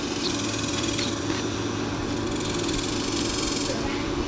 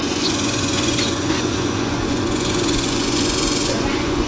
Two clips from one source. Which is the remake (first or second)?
second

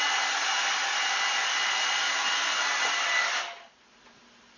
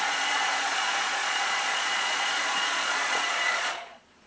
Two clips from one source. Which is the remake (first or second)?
second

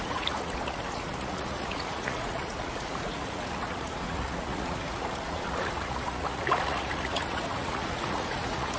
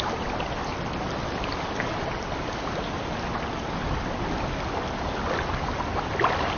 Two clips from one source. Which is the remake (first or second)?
first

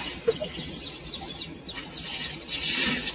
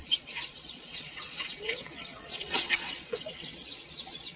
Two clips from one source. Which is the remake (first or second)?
second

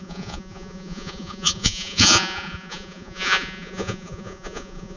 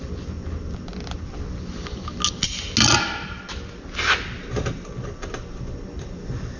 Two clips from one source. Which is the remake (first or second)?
first